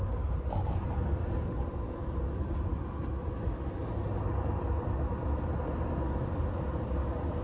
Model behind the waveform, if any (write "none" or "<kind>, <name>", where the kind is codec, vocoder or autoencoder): none